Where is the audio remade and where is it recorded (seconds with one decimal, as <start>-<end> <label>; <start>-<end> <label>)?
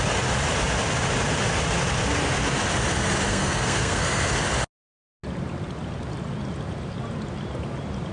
0.0-3.3 recorded; 3.3-4.3 remade; 4.3-8.1 recorded